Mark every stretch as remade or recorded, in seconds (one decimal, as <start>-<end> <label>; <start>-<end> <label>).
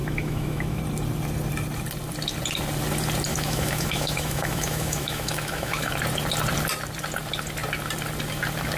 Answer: 0.0-0.8 remade; 0.8-3.3 recorded; 3.3-5.9 remade; 5.9-8.8 recorded